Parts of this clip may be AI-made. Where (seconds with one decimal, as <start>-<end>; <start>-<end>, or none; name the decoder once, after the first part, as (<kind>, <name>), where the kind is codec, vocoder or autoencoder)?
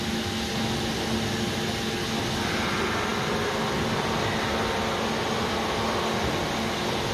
none